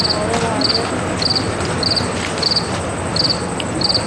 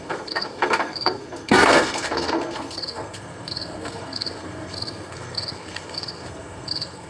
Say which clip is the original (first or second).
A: first